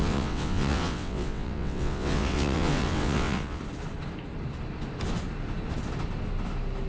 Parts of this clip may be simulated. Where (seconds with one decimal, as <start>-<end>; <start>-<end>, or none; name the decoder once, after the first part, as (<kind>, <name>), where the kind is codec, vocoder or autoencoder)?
0.0-3.6 (vocoder, WaveNeXt)